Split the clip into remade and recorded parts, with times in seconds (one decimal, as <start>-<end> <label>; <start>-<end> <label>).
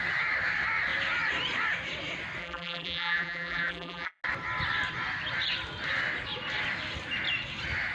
0.0-2.4 recorded; 2.4-4.2 remade; 4.2-7.9 recorded